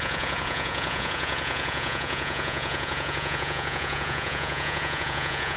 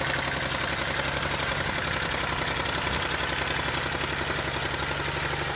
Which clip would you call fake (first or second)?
first